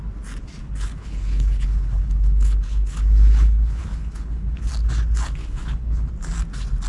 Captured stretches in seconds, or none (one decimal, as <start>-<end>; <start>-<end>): 0.0-0.6; 4.7-5.4; 6.1-6.9